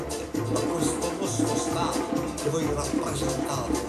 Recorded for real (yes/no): yes